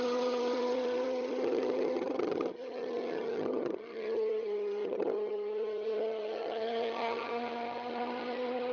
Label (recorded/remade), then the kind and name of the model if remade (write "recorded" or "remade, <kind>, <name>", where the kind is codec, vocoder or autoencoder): remade, vocoder, HiFi-GAN